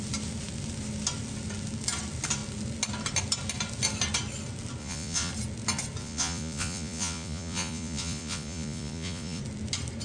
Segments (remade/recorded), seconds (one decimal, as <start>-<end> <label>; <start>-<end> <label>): 0.0-4.8 recorded; 4.8-5.3 remade; 5.3-6.0 recorded; 6.0-9.4 remade; 9.4-10.0 recorded